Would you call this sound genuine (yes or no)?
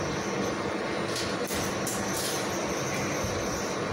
yes